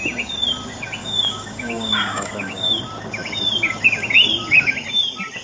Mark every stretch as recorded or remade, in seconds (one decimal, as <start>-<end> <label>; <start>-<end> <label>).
0.0-1.0 recorded; 1.0-2.8 remade; 2.8-5.4 recorded